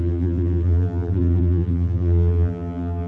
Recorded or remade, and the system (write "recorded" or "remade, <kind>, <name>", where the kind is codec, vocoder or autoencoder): remade, vocoder, BigVGAN v2